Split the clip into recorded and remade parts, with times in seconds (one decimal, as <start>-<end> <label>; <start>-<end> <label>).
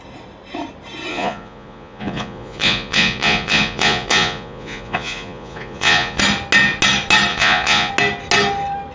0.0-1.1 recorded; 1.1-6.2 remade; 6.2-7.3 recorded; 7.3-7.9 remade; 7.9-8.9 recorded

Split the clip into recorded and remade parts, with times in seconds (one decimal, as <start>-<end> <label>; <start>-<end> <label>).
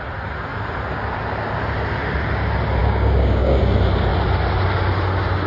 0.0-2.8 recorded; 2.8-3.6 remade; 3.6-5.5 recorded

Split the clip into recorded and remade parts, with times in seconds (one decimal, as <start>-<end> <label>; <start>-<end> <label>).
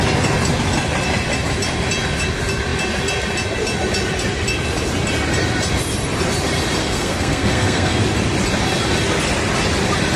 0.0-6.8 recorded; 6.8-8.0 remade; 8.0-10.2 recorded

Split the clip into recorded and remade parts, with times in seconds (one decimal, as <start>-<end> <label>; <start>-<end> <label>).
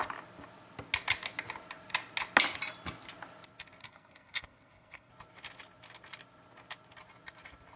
0.0-3.8 recorded; 3.8-5.1 remade; 5.1-7.8 recorded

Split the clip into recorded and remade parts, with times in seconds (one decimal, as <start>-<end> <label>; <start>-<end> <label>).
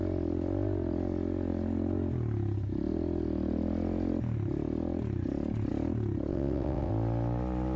0.0-6.3 recorded; 6.3-6.9 remade; 6.9-7.8 recorded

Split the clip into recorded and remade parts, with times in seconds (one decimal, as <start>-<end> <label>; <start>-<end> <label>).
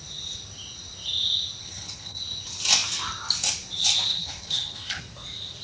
0.0-1.6 recorded; 1.6-2.2 remade; 2.2-4.1 recorded; 4.1-5.0 remade; 5.0-5.6 recorded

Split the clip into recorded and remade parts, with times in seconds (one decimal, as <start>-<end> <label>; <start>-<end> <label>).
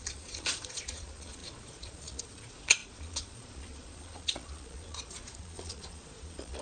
0.0-6.6 remade